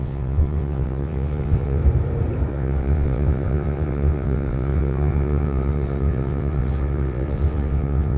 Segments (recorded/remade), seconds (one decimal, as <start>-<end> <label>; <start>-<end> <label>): 0.0-1.8 remade; 1.8-2.5 recorded; 2.5-8.2 remade